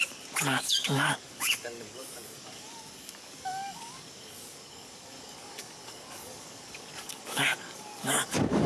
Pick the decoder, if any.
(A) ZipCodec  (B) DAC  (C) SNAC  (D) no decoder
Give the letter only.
B